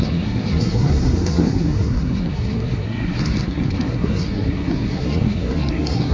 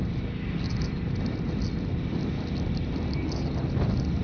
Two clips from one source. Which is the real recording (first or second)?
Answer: second